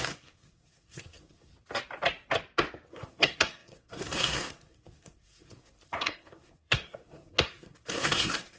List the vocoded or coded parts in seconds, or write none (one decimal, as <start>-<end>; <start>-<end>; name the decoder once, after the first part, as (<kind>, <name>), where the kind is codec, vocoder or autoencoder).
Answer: 0.0-1.5 (codec, SNAC); 2.9-8.6